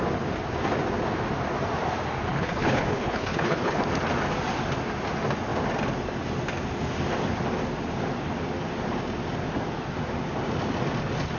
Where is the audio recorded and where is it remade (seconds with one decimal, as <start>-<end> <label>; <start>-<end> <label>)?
0.0-2.3 recorded; 2.3-3.8 remade; 3.8-11.4 recorded